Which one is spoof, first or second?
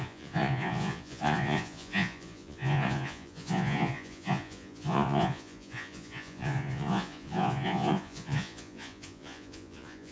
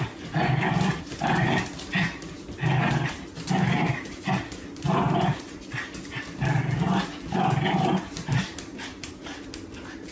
first